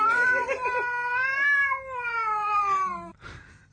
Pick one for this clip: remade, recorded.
recorded